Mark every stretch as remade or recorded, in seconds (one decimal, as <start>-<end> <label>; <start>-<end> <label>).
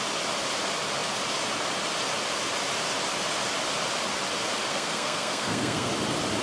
0.0-4.7 recorded; 4.7-5.9 remade; 5.9-6.4 recorded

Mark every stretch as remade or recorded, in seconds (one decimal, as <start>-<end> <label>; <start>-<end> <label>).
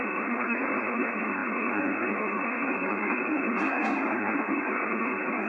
0.0-5.5 remade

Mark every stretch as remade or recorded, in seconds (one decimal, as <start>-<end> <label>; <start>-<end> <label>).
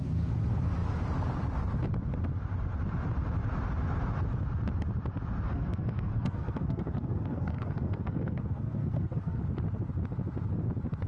0.0-5.5 recorded; 5.5-9.4 remade; 9.4-11.1 recorded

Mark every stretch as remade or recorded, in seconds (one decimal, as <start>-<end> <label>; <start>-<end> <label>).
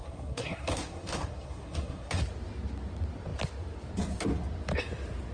0.0-2.2 remade; 2.2-5.3 recorded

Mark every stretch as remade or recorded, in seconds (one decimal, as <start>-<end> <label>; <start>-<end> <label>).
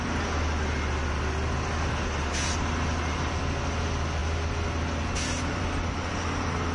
0.0-6.7 recorded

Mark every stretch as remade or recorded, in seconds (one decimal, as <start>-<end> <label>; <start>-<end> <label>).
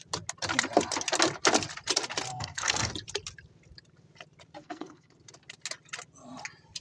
0.0-2.3 recorded; 2.3-2.9 remade; 2.9-4.6 recorded; 4.6-5.2 remade; 5.2-6.8 recorded